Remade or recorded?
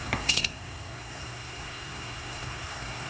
remade